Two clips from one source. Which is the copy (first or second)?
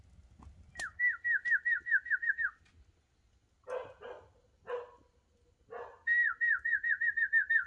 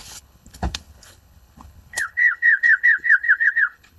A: second